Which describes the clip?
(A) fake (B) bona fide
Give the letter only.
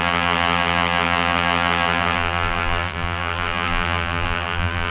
A